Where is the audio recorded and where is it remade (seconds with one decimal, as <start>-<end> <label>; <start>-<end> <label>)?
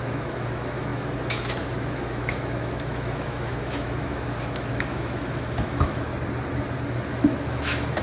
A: 0.0-6.1 remade; 6.1-7.1 recorded; 7.1-8.0 remade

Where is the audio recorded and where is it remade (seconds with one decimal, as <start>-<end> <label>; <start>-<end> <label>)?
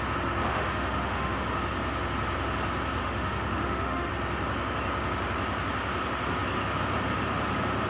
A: 0.0-0.5 recorded; 0.5-1.4 remade; 1.4-3.0 recorded; 3.0-4.1 remade; 4.1-7.9 recorded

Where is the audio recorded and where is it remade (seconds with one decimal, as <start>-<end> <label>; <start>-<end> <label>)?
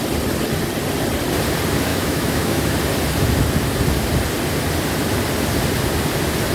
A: 0.0-1.9 recorded; 1.9-2.6 remade; 2.6-6.5 recorded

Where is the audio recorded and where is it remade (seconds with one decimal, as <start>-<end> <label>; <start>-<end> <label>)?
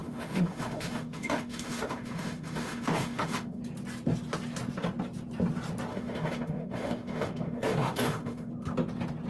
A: 0.0-3.6 remade; 3.6-5.9 recorded; 5.9-8.5 remade; 8.5-9.3 recorded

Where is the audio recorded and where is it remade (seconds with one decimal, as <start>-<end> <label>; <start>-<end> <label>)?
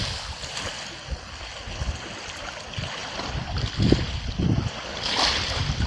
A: 0.0-5.9 recorded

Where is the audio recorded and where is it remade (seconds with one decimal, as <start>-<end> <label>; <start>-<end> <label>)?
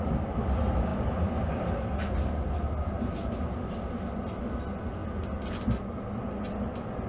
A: 0.0-7.1 recorded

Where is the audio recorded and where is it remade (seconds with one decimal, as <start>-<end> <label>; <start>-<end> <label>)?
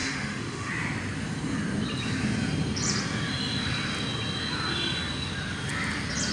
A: 0.0-0.7 remade; 0.7-6.3 recorded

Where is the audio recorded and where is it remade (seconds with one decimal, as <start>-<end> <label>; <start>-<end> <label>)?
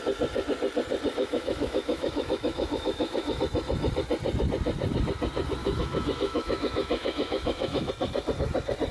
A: 0.0-1.2 recorded; 1.2-3.4 remade; 3.4-5.6 recorded; 5.6-7.9 remade; 7.9-8.9 recorded